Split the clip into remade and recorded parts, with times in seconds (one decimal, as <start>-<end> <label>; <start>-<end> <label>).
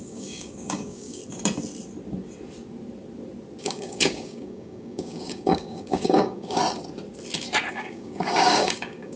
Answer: 0.0-1.2 remade; 1.2-3.6 recorded; 3.6-6.6 remade; 6.6-7.7 recorded; 7.7-9.2 remade